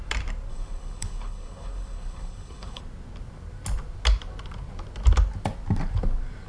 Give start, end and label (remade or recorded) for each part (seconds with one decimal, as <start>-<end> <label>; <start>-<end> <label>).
0.0-0.5 recorded; 0.5-2.8 remade; 2.8-6.5 recorded